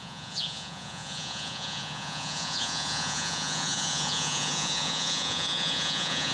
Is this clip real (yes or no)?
no